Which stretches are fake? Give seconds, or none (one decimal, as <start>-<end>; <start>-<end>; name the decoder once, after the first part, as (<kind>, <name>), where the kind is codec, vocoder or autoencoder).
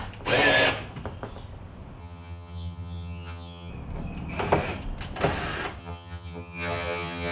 2.0-3.7 (vocoder, HiFi-GAN); 5.8-7.3